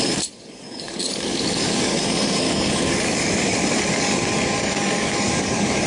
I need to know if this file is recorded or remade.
remade